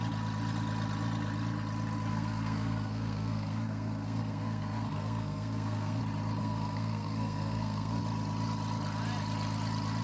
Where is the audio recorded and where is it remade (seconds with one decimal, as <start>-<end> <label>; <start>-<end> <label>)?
0.0-2.1 recorded; 2.1-6.0 remade; 6.0-6.4 recorded; 6.4-8.0 remade; 8.0-10.0 recorded